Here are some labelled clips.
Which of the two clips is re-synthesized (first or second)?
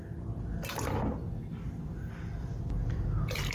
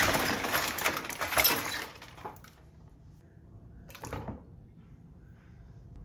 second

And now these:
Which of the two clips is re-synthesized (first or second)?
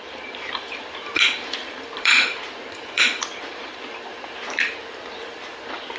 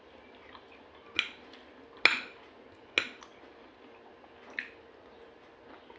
first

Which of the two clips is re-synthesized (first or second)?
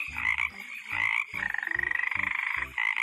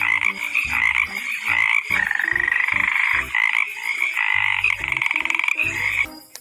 first